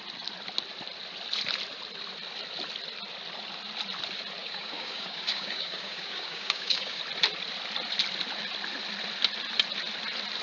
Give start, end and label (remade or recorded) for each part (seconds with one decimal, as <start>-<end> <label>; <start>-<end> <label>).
0.0-4.4 recorded; 4.4-7.0 remade; 7.0-10.4 recorded